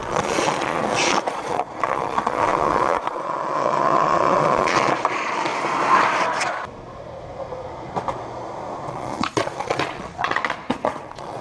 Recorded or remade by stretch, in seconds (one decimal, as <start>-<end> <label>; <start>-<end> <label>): 0.0-5.5 remade; 5.5-8.9 recorded; 8.9-11.4 remade